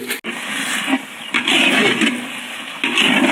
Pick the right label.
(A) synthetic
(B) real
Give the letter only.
B